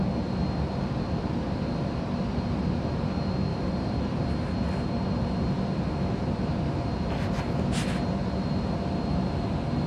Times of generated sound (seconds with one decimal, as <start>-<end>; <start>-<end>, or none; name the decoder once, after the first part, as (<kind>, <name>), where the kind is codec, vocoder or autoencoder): 3.5-4.3 (vocoder, BigVGAN v2)